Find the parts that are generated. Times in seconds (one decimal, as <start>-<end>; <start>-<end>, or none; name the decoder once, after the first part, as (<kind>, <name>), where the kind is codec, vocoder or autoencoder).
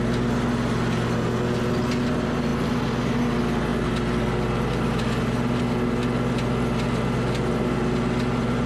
none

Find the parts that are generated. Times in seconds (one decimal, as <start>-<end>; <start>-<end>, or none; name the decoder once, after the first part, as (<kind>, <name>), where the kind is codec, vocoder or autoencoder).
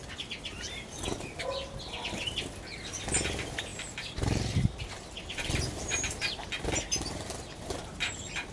0.0-1.1 (vocoder, BigVGAN v2); 3.7-6.5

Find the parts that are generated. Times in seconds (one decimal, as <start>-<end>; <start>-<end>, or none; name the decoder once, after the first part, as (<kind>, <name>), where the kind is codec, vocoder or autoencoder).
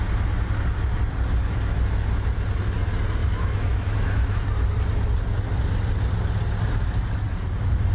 3.2-4.4 (autoencoder, DAC-VAE)